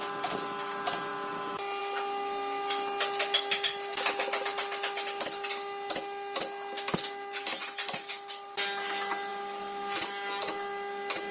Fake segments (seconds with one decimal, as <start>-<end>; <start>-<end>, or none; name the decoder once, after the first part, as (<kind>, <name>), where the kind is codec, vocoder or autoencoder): none